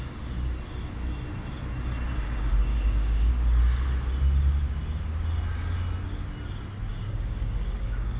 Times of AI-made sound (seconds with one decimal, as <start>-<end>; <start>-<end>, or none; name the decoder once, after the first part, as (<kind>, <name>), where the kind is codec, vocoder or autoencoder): 2.7-3.3 (codec, DAC); 6.9-8.2

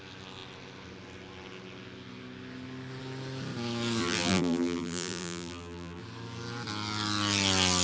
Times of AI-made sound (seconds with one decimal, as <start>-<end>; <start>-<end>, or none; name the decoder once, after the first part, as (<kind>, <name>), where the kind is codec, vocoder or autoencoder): 4.0-6.0 (vocoder, BigVGAN v2)

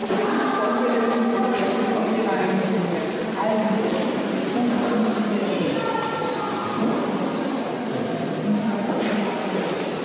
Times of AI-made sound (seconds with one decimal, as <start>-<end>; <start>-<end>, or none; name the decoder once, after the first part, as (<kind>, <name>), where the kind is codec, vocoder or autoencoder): none